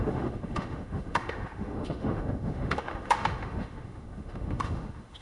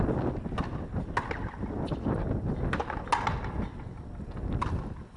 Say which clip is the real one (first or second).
second